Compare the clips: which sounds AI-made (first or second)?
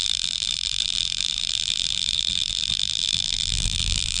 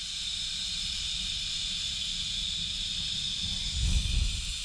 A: first